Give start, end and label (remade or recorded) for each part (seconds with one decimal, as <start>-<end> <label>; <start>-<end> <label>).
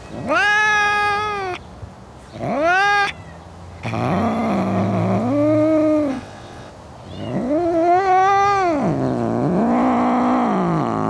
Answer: 0.0-6.1 recorded; 6.1-6.7 remade; 6.7-11.1 recorded